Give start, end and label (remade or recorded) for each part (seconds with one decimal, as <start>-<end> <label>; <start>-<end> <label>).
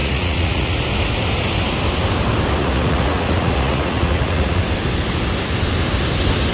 0.0-0.8 remade; 0.8-2.6 recorded; 2.6-4.6 remade; 4.6-6.5 recorded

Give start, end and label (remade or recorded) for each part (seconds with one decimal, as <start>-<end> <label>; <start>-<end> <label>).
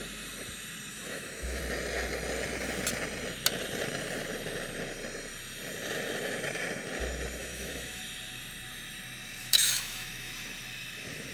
0.0-0.9 recorded; 0.9-1.6 remade; 1.6-7.4 recorded; 7.4-8.0 remade; 8.0-9.4 recorded; 9.4-10.3 remade; 10.3-11.3 recorded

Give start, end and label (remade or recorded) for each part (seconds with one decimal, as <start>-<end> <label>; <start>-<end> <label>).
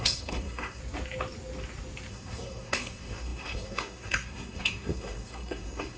0.0-0.8 remade; 0.8-2.1 recorded; 2.1-6.0 remade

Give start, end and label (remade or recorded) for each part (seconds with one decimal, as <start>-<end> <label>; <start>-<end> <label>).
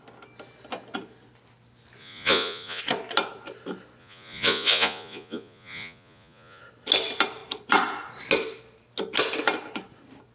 0.0-2.0 recorded; 2.0-2.8 remade; 2.8-4.0 recorded; 4.0-6.6 remade; 6.6-10.3 recorded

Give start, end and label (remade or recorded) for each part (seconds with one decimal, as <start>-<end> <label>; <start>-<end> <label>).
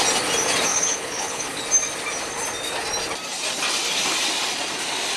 0.0-0.7 recorded; 0.7-1.6 remade; 1.6-5.2 recorded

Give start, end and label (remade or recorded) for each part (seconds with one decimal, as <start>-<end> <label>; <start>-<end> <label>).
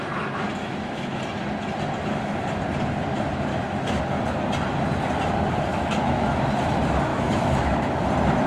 0.0-0.6 recorded; 0.6-1.2 remade; 1.2-3.5 recorded; 3.5-4.0 remade; 4.0-5.7 recorded; 5.7-6.4 remade; 6.4-7.1 recorded; 7.1-8.0 remade; 8.0-8.5 recorded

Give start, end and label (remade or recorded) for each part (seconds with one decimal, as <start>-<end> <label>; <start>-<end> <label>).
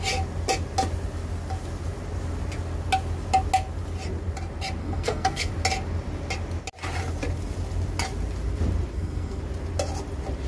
0.0-4.8 recorded; 4.8-5.5 remade; 5.5-8.9 recorded; 8.9-9.4 remade; 9.4-10.5 recorded